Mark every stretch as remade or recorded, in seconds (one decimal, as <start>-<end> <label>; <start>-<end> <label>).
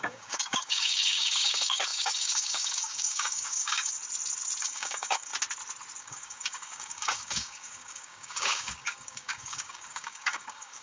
0.0-4.0 remade; 4.0-4.6 recorded; 4.6-5.3 remade; 5.3-6.0 recorded; 6.0-10.8 remade